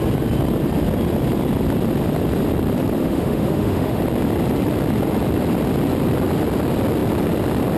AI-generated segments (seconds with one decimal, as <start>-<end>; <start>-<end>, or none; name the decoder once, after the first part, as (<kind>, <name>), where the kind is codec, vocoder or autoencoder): 3.0-4.0 (autoencoder, DAC-VAE)